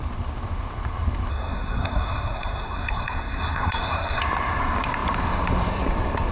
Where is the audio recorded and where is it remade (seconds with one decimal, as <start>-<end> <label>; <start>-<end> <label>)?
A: 0.0-1.3 recorded; 1.3-4.2 remade; 4.2-6.3 recorded